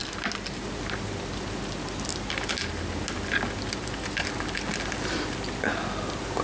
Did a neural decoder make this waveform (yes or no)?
no